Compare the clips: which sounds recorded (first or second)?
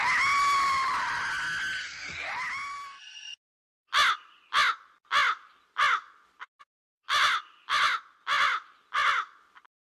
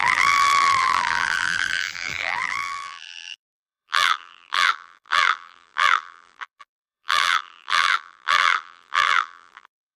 first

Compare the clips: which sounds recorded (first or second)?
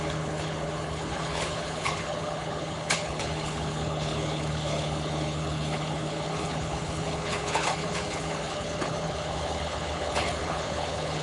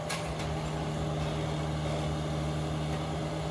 second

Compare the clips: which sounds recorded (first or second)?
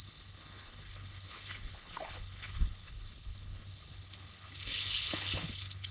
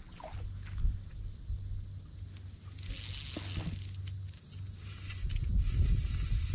second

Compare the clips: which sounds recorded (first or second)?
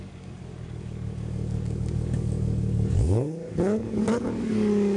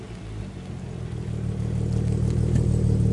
second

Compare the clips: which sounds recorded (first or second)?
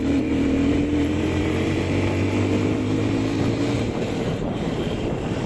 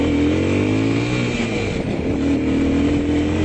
second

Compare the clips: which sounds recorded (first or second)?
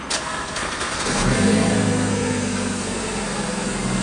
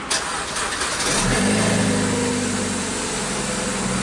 second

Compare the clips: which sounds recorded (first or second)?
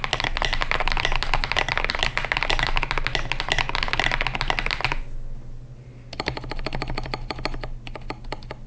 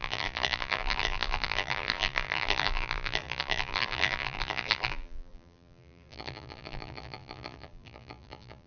first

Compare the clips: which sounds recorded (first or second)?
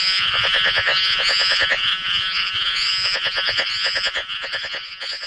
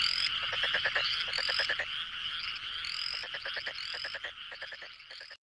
second